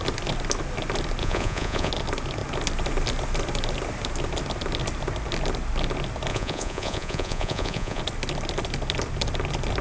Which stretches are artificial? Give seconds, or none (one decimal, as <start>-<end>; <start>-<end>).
1.2-1.9; 6.3-8.0